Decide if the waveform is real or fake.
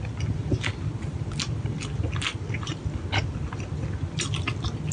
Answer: real